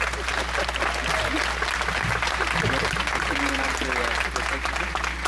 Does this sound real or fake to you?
real